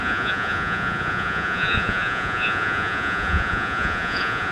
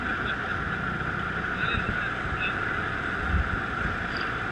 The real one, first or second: second